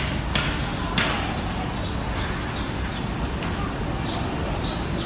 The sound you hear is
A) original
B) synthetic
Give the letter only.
A